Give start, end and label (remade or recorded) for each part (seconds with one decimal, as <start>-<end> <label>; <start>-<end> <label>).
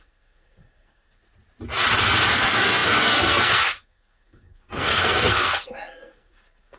0.0-1.2 remade; 1.2-2.3 recorded; 2.3-6.8 remade